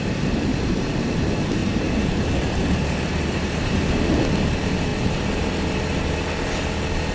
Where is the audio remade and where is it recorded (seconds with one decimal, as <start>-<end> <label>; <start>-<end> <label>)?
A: 0.0-0.5 recorded; 0.5-1.1 remade; 1.1-1.6 recorded; 1.6-3.7 remade; 3.7-7.1 recorded